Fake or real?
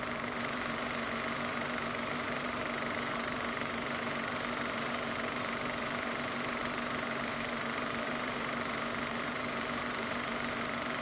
fake